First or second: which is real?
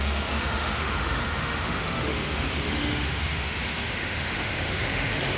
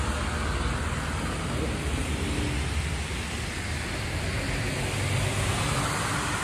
second